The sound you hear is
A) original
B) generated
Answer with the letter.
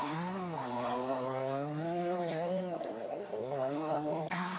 B